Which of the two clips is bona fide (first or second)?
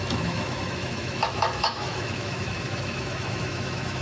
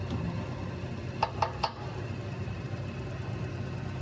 second